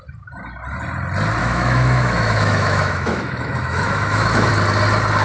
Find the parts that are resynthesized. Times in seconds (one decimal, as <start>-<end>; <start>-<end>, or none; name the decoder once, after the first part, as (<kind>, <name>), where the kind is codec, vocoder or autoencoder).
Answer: 1.4-4.5 (autoencoder, DAC-VAE)